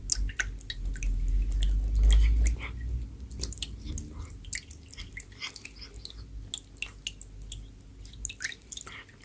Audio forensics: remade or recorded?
recorded